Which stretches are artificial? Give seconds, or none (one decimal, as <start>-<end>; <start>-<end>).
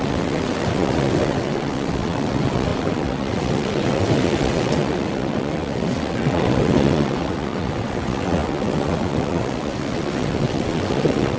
0.0-11.4